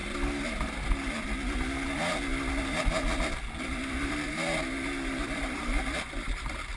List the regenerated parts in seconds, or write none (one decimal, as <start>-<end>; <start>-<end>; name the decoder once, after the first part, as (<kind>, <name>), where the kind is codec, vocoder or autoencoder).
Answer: 4.1-6.8 (vocoder, BigVGAN v2)